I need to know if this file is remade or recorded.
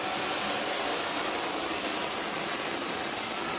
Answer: recorded